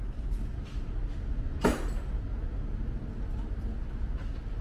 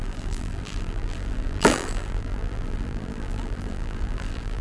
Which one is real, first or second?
first